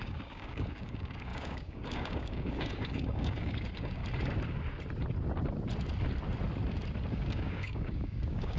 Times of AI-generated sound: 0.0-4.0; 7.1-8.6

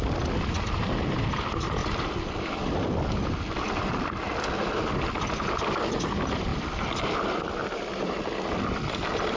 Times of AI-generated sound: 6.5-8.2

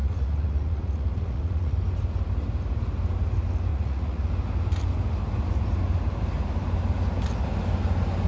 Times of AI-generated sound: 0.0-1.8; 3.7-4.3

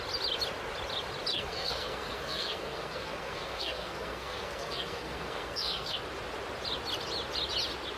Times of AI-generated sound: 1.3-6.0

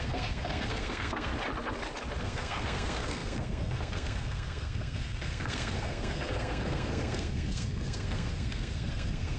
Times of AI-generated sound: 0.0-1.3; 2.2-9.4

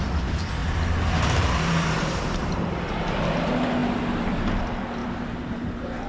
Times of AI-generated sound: 0.6-2.9; 5.0-6.1